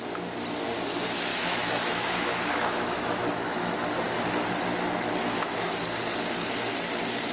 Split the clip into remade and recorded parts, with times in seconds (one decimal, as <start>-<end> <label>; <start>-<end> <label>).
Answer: 0.0-1.3 recorded; 1.3-3.9 remade; 3.9-5.2 recorded; 5.2-5.8 remade; 5.8-7.3 recorded